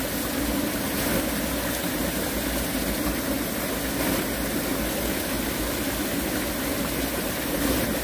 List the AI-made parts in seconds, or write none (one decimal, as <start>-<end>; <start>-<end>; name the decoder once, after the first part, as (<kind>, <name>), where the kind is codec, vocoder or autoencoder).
none